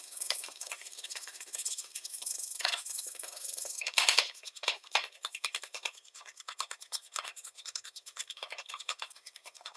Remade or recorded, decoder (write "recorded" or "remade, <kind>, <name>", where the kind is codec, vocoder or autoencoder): remade, codec, SNAC